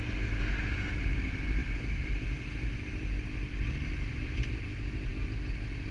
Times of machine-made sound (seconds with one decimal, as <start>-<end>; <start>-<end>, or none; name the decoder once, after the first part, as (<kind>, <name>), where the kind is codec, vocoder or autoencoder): none